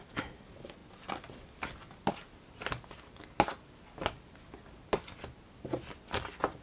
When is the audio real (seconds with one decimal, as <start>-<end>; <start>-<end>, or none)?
0.0-6.6